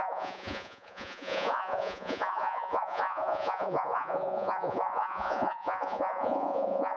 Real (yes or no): no